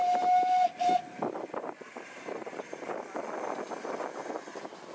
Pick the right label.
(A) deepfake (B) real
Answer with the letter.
B